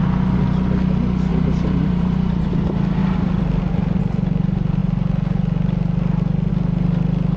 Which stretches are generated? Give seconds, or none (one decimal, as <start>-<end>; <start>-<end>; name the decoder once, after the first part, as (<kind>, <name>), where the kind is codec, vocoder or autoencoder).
1.3-2.5 (vocoder, BigVGAN v2)